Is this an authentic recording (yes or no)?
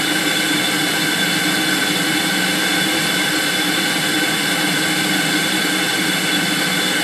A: yes